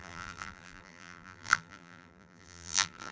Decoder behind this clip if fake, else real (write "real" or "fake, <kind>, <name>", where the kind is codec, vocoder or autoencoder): fake, vocoder, BigVGAN v2